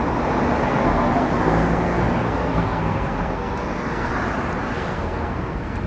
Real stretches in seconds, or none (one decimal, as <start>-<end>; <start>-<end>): 0.0-0.6; 4.1-4.6